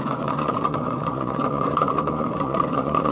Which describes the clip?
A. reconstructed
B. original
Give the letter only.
A